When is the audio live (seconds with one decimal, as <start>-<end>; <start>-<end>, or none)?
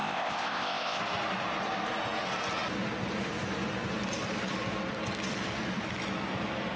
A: 1.0-6.8